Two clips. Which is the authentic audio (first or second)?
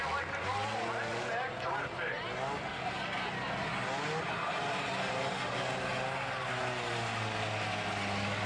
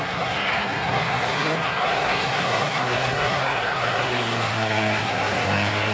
first